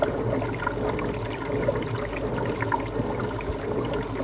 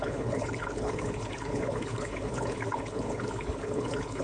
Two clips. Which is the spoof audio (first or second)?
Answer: second